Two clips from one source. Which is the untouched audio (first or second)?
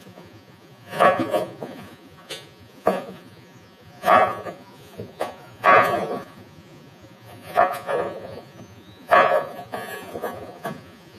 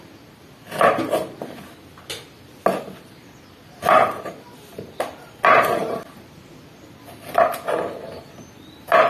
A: second